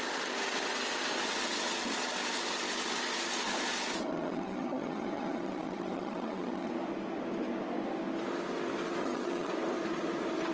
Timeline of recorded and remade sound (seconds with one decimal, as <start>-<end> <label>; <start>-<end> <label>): 0.0-4.0 recorded; 4.0-6.7 remade; 6.7-9.0 recorded; 9.0-9.5 remade; 9.5-10.5 recorded